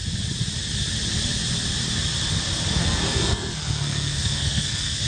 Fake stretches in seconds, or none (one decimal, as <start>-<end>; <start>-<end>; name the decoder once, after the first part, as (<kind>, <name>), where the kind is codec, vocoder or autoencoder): 2.8-5.1 (codec, SNAC)